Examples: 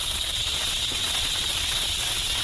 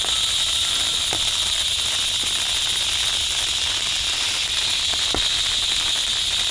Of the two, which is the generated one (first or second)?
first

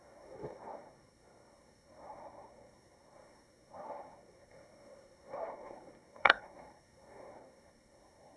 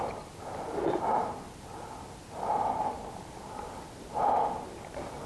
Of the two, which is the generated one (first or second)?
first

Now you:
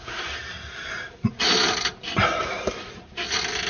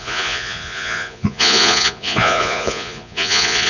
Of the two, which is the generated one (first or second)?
second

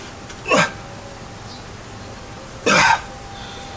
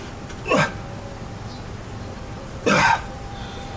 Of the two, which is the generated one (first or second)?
second